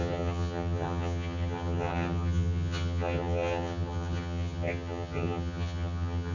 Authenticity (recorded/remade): remade